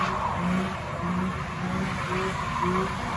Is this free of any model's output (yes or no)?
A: yes